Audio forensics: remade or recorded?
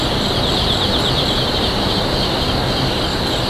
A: recorded